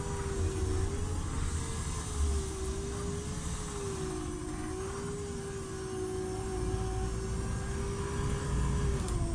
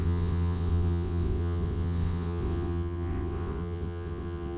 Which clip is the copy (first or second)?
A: second